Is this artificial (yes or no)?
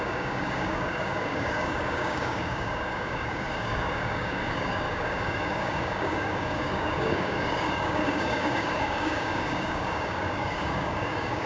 yes